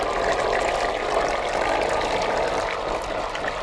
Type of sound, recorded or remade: recorded